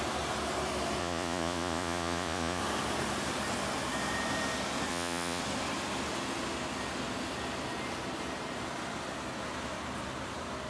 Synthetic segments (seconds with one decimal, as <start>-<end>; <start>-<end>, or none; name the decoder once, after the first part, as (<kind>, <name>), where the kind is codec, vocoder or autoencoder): 1.0-2.6 (vocoder, Vocos); 4.9-5.4